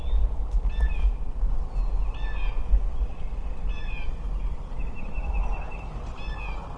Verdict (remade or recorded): recorded